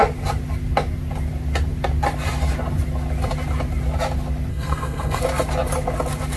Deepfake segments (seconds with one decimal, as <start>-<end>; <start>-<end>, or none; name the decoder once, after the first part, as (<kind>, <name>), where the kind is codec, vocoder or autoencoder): 4.5-5.2 (codec, SNAC)